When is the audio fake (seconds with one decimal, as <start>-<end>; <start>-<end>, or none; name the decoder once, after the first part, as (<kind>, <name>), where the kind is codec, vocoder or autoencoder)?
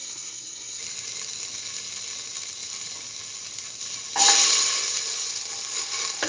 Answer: 0.0-0.8 (codec, SNAC)